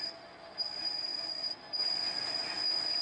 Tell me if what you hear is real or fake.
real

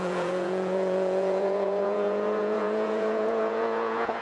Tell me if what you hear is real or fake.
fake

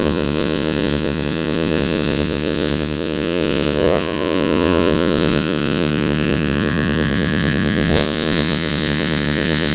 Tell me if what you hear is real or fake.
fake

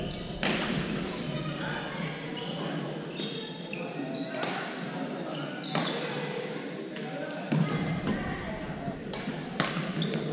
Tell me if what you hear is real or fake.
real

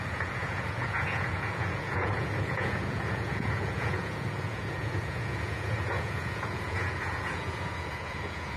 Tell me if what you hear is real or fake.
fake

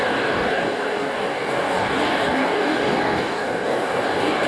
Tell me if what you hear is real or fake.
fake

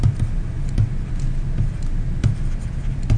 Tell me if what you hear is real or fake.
real